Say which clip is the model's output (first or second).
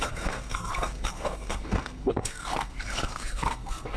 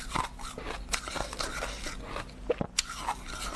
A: first